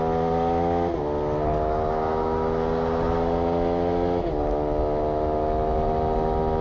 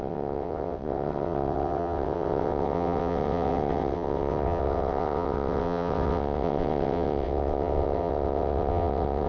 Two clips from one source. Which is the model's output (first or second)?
second